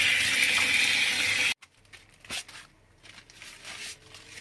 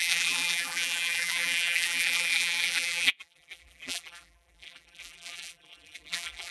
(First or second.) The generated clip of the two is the second